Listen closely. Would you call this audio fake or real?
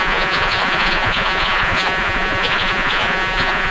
fake